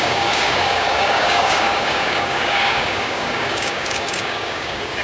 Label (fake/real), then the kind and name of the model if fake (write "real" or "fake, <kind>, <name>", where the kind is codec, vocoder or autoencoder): fake, codec, DAC